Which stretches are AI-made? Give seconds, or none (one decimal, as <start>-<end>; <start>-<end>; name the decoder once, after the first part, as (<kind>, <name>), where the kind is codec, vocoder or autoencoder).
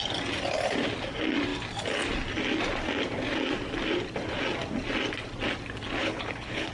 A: 6.0-6.7 (codec, HILCodec)